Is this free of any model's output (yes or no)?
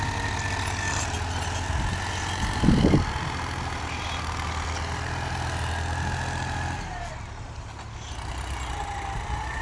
yes